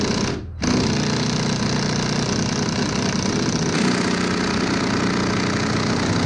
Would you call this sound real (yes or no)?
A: yes